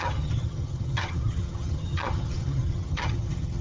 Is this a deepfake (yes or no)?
yes